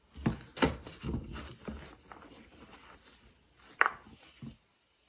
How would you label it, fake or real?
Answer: real